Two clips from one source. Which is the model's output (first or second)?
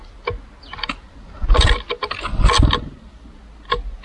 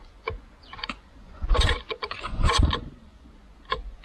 second